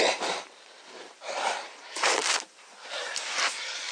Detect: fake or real fake